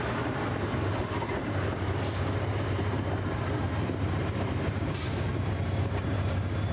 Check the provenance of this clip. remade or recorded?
remade